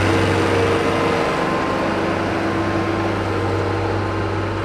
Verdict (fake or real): real